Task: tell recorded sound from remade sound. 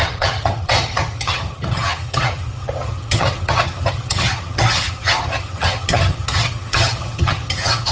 remade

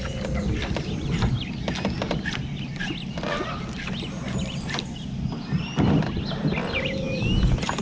recorded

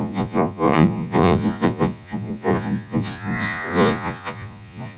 remade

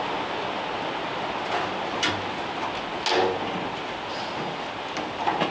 recorded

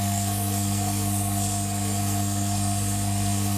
remade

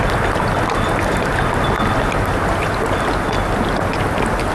recorded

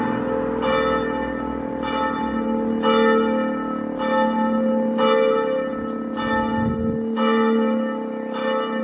recorded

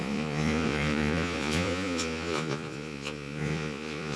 remade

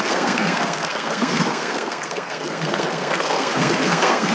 remade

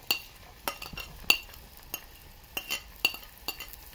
recorded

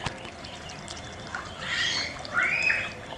recorded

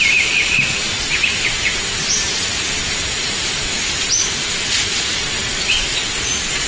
remade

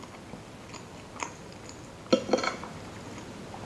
recorded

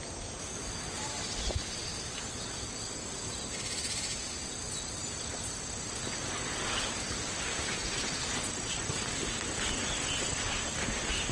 recorded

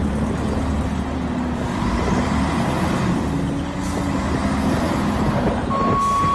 recorded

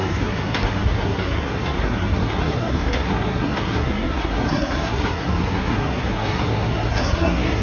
remade